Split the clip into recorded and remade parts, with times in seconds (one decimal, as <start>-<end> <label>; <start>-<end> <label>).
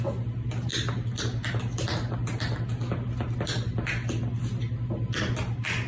0.0-5.9 recorded